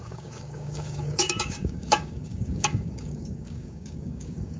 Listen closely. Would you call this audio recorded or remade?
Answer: remade